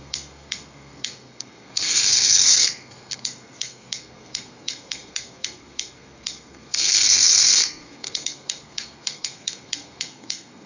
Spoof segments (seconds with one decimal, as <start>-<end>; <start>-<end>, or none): 0.0-10.7